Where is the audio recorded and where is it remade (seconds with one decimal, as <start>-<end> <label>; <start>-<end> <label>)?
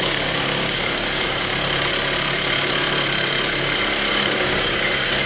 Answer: 0.0-1.5 remade; 1.5-4.1 recorded; 4.1-5.3 remade